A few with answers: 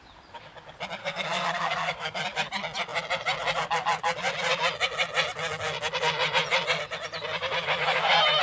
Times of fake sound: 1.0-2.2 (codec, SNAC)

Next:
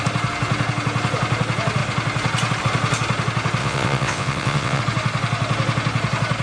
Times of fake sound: 3.6-4.8 (vocoder, WaveNeXt)

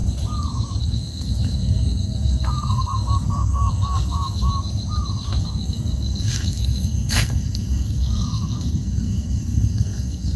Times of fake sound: 0.8-4.5 (codec, SNAC); 5.4-10.4

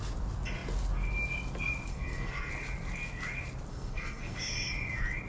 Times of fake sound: 1.9-2.5 (codec, SNAC); 3.7-4.5

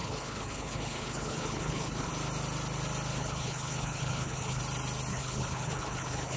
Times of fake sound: 0.0-2.1 (codec, HILCodec); 3.1-4.6; 5.1-6.4

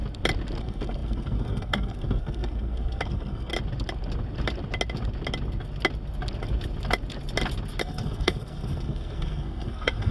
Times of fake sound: 0.6-3.5 (codec, SNAC); 7.8-10.1